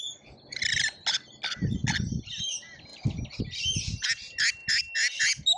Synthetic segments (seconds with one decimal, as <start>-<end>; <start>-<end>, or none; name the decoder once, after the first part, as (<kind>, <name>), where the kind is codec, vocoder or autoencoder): none